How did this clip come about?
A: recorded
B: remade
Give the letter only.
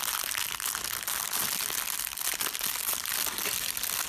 A